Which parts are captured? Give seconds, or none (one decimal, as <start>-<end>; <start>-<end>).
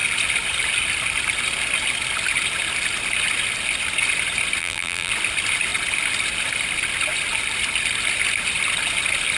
0.0-4.6; 5.1-9.4